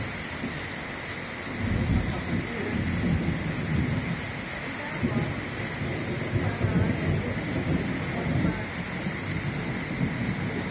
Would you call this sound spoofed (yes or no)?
no